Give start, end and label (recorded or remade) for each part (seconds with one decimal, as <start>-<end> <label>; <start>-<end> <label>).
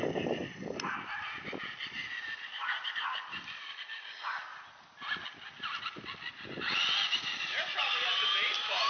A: 0.0-8.9 recorded